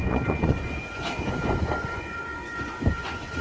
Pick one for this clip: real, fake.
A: fake